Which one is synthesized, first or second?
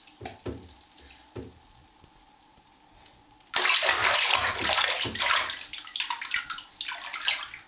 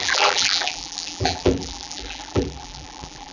second